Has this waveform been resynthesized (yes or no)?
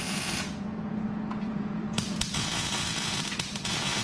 yes